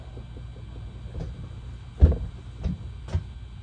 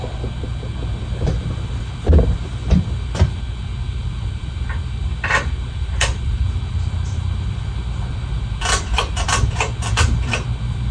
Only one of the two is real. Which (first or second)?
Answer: first